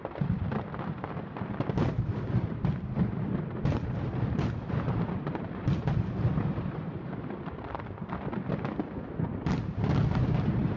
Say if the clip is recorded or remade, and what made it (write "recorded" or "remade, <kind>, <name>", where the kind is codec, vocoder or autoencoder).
remade, vocoder, BigVGAN v2